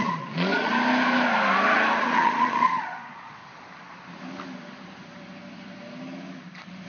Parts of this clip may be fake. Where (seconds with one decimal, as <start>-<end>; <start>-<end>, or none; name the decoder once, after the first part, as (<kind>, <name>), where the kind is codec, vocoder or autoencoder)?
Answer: 0.0-0.7 (vocoder, Vocos); 2.0-3.4